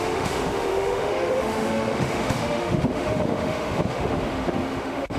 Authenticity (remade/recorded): remade